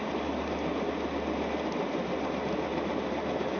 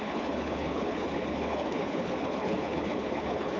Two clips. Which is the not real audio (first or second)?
second